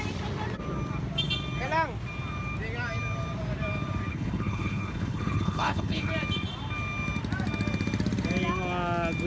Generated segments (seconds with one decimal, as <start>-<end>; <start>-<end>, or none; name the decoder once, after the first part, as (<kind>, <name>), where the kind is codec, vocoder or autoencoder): 4.1-6.1 (codec, HILCodec)

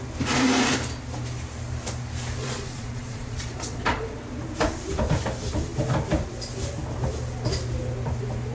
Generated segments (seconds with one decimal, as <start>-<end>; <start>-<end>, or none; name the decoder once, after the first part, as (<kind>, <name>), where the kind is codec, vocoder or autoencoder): 2.4-4.2 (vocoder, Vocos)

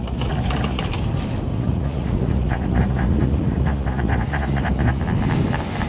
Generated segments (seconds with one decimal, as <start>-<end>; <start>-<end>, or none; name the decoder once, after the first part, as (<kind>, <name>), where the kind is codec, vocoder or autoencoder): 0.0-0.8 (vocoder, Vocos); 1.5-5.0

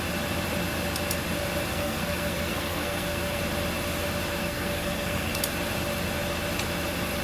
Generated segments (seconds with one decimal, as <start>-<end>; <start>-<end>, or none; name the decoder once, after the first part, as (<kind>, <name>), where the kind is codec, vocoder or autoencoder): 1.7-3.4 (codec, SNAC); 4.4-5.4

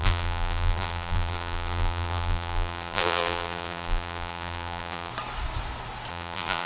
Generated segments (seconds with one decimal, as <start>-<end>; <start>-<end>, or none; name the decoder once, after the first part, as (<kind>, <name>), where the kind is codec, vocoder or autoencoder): 0.0-5.1 (vocoder, BigVGAN v2); 6.1-6.7

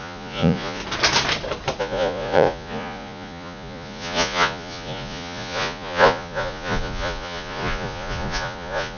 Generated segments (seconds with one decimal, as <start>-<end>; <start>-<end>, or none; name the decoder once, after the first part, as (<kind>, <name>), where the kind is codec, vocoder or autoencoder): 0.0-0.8 (vocoder, Vocos); 1.8-9.0

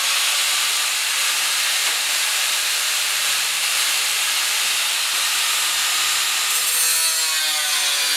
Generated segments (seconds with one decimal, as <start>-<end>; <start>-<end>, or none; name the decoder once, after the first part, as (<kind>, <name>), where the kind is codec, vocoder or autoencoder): 0.4-0.9 (vocoder, BigVGAN v2); 1.8-4.3